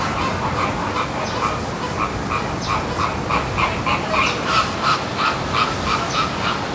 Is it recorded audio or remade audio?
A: recorded